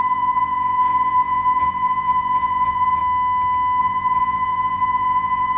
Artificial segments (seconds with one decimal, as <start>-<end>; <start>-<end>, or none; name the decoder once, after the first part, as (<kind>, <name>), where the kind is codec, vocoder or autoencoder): 0.0-3.0 (vocoder, Vocos); 3.8-5.6